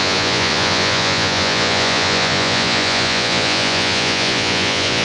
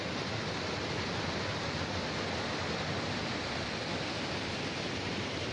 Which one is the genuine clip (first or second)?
second